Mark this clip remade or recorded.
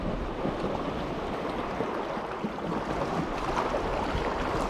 recorded